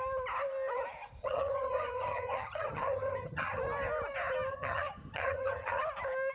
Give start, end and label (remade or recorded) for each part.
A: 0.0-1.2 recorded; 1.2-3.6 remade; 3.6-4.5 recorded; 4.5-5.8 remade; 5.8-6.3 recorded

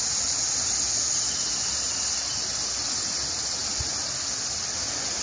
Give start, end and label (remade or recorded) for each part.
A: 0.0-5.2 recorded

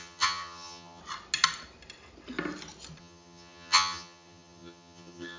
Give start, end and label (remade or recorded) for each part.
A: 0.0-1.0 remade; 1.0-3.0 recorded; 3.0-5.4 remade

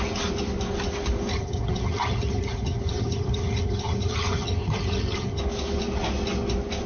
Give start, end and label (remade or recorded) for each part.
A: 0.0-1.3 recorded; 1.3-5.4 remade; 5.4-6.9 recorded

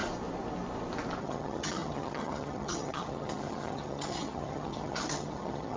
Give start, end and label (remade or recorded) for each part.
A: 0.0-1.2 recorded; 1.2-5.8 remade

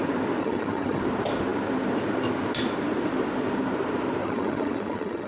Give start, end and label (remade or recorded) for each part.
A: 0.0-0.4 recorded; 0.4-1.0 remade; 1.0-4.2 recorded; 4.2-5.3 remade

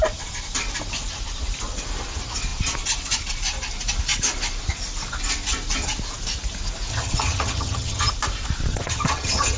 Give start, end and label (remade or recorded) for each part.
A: 0.0-6.9 recorded; 6.9-8.1 remade; 8.1-8.7 recorded; 8.7-9.6 remade

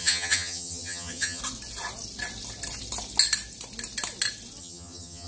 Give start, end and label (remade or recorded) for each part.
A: 0.0-1.4 remade; 1.4-4.6 recorded; 4.6-5.3 remade